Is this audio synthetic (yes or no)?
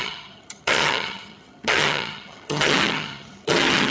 yes